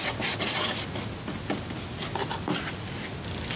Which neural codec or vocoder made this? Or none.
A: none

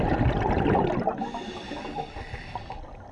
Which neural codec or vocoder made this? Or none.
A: none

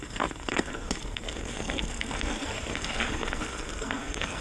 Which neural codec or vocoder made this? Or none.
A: codec, SNAC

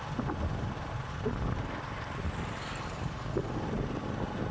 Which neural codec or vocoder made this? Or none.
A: none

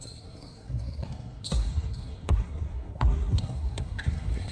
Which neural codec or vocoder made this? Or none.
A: codec, SNAC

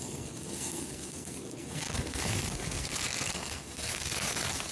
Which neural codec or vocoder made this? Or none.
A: codec, SNAC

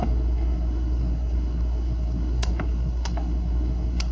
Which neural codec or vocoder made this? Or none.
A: codec, SNAC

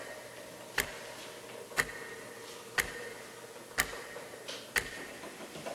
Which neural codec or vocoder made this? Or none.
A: none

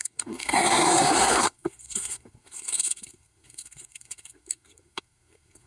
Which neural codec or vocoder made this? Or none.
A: codec, SNAC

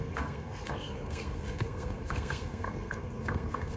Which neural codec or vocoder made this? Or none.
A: codec, SNAC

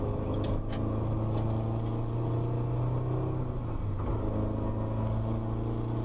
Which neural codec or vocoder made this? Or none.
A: none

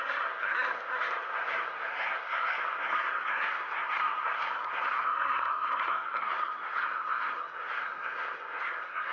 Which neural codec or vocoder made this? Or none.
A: codec, SNAC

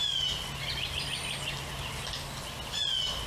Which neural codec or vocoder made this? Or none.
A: none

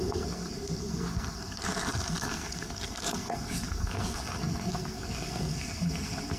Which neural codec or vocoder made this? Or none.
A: codec, SNAC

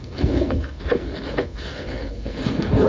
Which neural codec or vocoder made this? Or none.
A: codec, SNAC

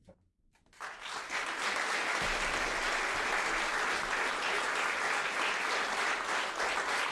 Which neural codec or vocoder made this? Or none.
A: none